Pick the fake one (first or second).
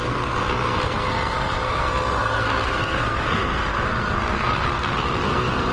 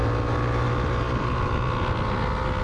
first